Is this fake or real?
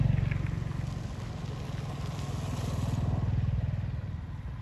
real